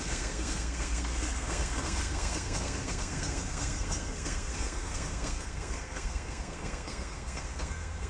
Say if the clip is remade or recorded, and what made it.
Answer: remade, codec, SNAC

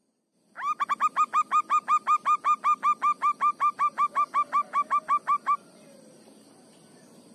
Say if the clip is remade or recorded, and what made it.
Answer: recorded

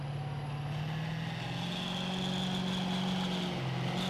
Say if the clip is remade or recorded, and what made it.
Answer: recorded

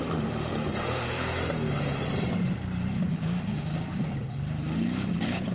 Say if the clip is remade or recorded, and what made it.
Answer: remade, vocoder, BigVGAN v2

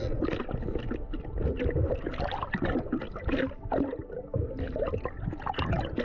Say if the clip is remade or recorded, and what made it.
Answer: recorded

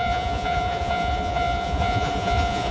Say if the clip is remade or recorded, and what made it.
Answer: remade, vocoder, Vocos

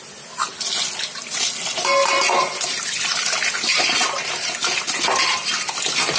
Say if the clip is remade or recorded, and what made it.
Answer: recorded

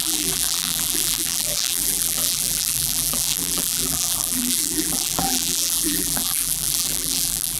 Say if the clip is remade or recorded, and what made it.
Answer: remade, vocoder, BigVGAN v2